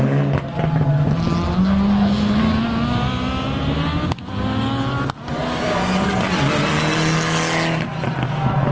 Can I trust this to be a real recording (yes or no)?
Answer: yes